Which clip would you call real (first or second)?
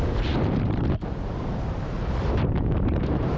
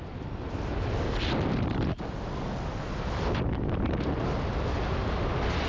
second